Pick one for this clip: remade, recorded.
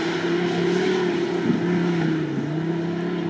recorded